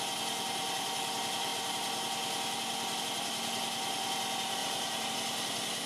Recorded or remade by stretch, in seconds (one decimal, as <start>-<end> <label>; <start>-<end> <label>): 0.0-4.6 recorded; 4.6-5.1 remade; 5.1-5.9 recorded